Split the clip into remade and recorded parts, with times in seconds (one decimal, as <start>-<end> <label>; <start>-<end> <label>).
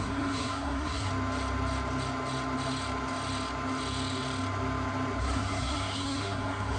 0.0-1.1 remade; 1.1-5.2 recorded; 5.2-6.8 remade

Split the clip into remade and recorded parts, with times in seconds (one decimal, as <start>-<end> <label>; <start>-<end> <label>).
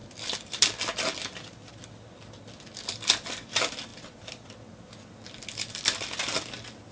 0.0-3.9 recorded; 3.9-5.4 remade; 5.4-6.9 recorded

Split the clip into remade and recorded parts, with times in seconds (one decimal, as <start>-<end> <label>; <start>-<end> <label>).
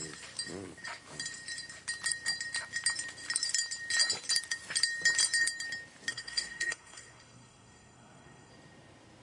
0.0-6.1 recorded; 6.1-8.5 remade; 8.5-9.2 recorded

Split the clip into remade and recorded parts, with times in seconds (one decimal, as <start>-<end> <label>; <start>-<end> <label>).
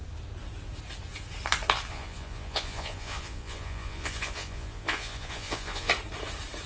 0.0-1.9 recorded; 1.9-5.9 remade; 5.9-6.7 recorded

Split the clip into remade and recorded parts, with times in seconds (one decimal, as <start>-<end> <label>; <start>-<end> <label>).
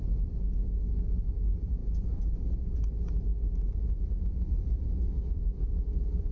0.0-0.6 remade; 0.6-1.3 recorded; 1.3-1.8 remade; 1.8-5.3 recorded; 5.3-6.3 remade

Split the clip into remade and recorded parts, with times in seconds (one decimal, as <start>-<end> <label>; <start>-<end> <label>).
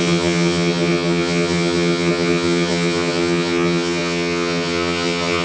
0.0-5.4 remade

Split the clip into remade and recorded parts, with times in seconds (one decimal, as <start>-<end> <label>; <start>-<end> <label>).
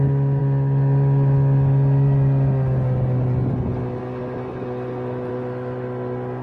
0.0-6.4 recorded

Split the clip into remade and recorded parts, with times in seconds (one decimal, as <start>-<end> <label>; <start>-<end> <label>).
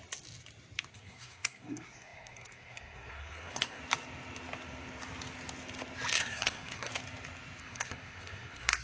0.0-0.9 recorded; 0.9-3.8 remade; 3.8-6.2 recorded; 6.2-6.9 remade; 6.9-7.6 recorded; 7.6-8.8 remade